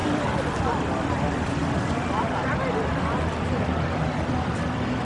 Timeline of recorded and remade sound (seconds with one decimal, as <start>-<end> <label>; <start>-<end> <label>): 0.0-1.6 remade; 1.6-4.3 recorded; 4.3-5.0 remade